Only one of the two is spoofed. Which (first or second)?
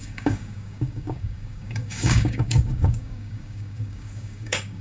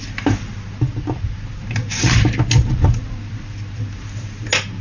first